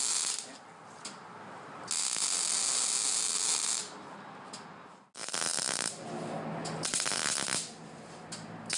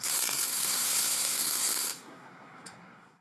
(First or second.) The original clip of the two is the first